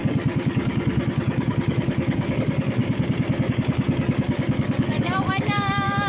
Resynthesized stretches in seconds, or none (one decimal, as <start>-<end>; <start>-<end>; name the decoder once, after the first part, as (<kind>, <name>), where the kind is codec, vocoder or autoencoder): 0.0-2.8 (codec, DAC); 3.5-6.1